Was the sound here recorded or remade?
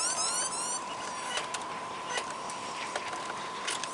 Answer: recorded